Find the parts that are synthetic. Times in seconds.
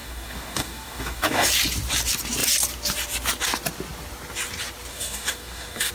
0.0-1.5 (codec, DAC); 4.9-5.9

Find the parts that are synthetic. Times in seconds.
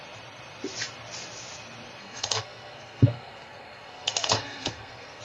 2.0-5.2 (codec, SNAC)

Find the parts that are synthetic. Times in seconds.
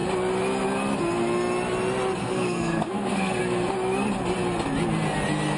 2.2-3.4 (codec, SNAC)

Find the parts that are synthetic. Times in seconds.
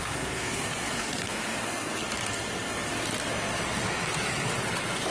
0.0-2.0 (codec, SNAC)